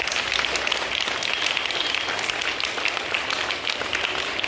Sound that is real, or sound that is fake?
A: real